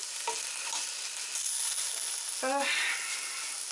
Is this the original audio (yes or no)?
yes